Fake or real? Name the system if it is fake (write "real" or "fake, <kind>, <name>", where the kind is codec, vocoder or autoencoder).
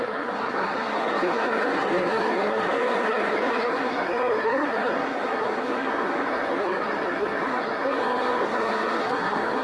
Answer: fake, codec, SNAC